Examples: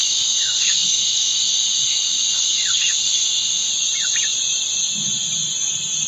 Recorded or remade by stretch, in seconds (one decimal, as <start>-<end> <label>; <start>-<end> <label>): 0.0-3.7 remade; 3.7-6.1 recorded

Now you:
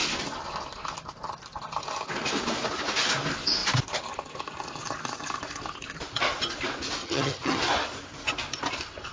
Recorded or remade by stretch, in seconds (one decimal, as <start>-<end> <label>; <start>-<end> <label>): 0.0-7.0 recorded; 7.0-7.6 remade; 7.6-9.1 recorded

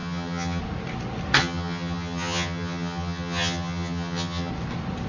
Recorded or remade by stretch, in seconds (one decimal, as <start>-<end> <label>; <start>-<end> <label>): 0.0-0.6 remade; 0.6-1.4 recorded; 1.4-4.5 remade; 4.5-5.1 recorded